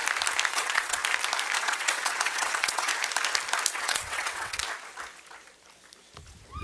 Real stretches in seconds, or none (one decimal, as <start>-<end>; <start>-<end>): 0.0-0.5; 1.0-1.6; 2.9-3.7; 4.6-6.6